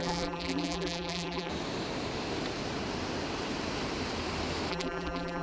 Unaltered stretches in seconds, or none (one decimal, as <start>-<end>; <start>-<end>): 1.5-4.7